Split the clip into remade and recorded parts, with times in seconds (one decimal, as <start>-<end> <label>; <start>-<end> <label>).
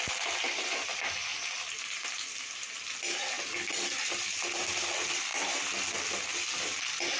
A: 0.0-1.3 remade; 1.3-3.7 recorded; 3.7-5.3 remade; 5.3-6.8 recorded; 6.8-7.2 remade